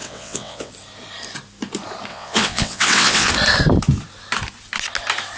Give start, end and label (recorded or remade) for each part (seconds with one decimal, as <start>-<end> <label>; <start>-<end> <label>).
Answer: 0.0-0.7 remade; 0.7-2.1 recorded; 2.1-3.3 remade; 3.3-5.4 recorded